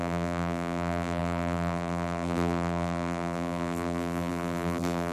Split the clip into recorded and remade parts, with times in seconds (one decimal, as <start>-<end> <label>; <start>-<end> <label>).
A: 0.0-5.1 remade